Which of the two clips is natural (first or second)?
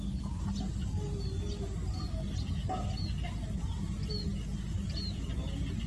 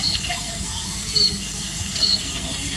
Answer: first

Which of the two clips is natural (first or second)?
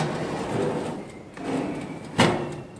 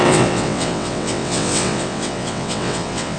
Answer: first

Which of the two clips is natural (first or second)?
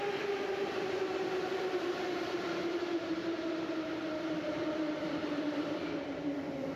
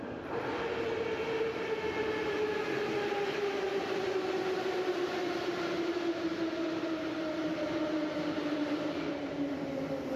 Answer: second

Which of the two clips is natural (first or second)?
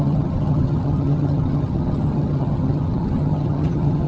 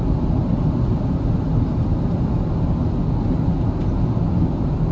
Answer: second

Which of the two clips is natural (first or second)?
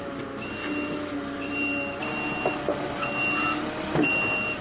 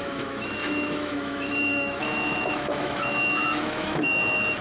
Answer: first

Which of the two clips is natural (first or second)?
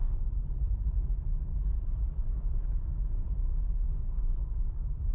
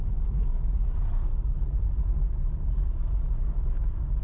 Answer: second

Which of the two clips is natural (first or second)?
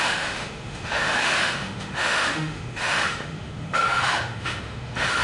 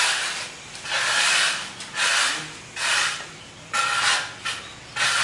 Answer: second